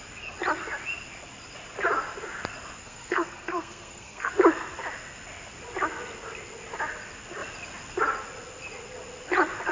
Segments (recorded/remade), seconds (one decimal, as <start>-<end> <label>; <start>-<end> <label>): 0.0-2.8 recorded; 2.8-4.3 remade; 4.3-9.7 recorded